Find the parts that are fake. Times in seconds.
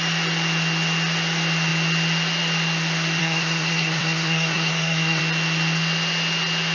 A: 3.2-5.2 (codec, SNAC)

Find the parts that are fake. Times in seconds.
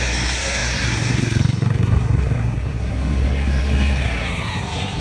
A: 0.0-5.0 (codec, SNAC)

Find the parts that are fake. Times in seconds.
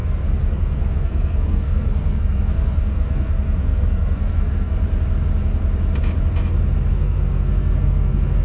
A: 0.0-4.8 (codec, SNAC); 6.9-8.4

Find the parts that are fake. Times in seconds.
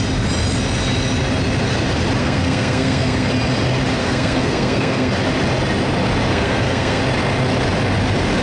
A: 2.2-3.3 (codec, SNAC); 4.0-5.1; 6.3-7.0